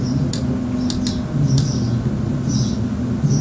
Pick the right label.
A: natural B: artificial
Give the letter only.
A